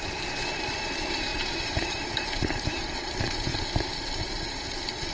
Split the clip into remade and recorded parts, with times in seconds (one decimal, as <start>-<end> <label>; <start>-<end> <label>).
0.0-3.5 remade; 3.5-5.1 recorded